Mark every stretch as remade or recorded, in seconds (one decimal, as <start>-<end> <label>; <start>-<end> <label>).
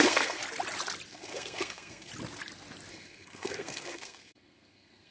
0.0-0.4 remade; 0.4-1.1 recorded; 1.1-2.1 remade; 2.1-2.9 recorded; 2.9-5.1 remade